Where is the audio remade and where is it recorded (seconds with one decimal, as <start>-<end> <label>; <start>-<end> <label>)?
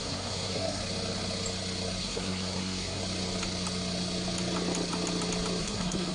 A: 0.0-0.8 remade; 0.8-2.0 recorded; 2.0-3.0 remade; 3.0-5.6 recorded; 5.6-6.1 remade